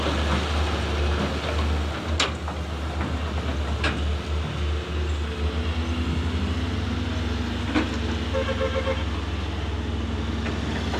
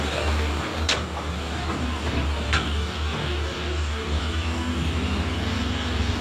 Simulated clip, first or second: second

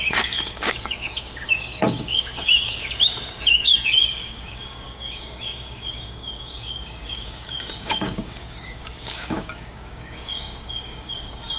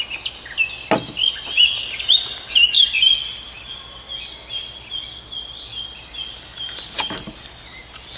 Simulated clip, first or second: first